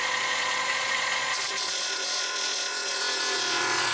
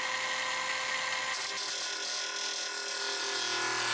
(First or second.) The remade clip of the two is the first